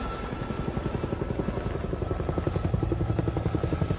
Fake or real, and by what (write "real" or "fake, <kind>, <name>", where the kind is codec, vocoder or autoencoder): real